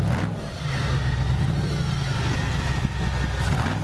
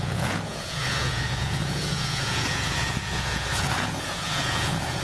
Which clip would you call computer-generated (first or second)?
second